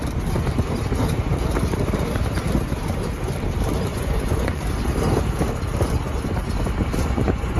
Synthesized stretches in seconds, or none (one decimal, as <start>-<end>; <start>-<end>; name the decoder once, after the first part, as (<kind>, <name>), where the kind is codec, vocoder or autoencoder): 3.9-4.6 (vocoder, Vocos); 7.0-7.6